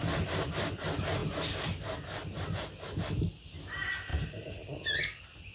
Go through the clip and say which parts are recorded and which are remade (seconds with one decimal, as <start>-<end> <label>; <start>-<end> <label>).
0.0-4.1 recorded; 4.1-4.6 remade; 4.6-5.5 recorded